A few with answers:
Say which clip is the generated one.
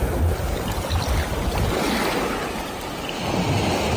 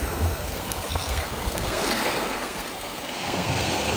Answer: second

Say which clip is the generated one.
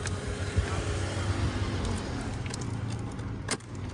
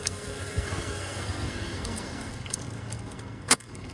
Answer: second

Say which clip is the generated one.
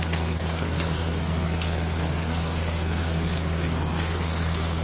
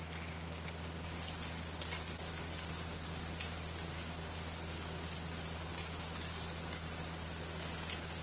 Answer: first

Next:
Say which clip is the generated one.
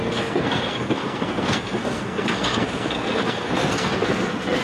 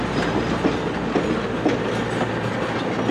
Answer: first